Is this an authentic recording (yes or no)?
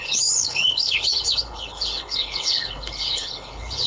no